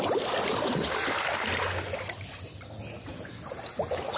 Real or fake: real